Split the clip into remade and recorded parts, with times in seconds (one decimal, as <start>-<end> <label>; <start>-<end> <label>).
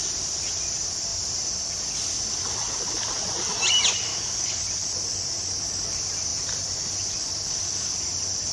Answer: 0.0-4.1 recorded; 4.1-4.6 remade; 4.6-8.5 recorded